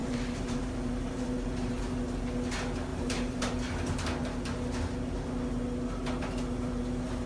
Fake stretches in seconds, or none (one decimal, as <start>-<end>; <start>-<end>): 0.0-1.8; 2.9-3.4

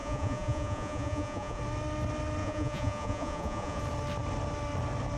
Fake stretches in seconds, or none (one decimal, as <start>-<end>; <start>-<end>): 0.0-1.6; 2.4-3.8